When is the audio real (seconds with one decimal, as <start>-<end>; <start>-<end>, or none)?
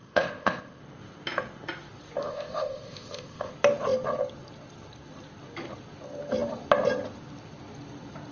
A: 0.8-2.2; 3.5-8.3